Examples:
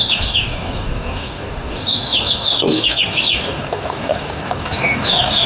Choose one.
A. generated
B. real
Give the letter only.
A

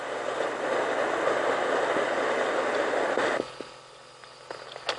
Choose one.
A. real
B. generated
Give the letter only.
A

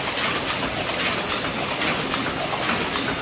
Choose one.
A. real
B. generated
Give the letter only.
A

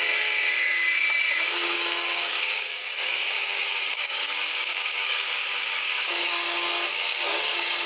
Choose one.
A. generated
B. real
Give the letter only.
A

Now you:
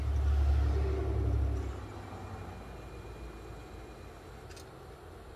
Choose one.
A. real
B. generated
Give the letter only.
A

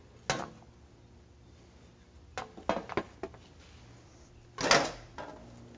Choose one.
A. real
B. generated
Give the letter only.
A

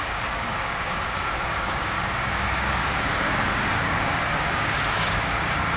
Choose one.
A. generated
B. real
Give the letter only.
A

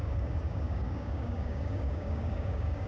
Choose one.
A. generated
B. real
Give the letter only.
A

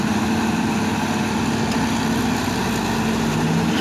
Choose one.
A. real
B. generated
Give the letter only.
A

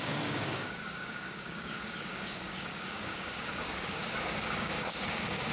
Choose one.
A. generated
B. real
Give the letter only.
A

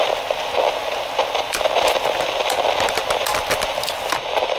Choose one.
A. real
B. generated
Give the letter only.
A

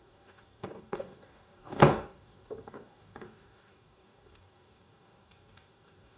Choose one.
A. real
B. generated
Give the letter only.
B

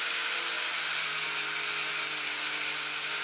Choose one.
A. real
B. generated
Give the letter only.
A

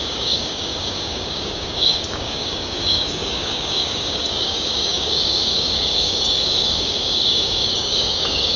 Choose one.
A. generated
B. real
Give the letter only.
A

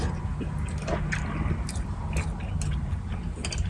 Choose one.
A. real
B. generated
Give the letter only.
A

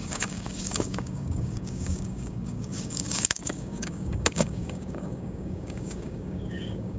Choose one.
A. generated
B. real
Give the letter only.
A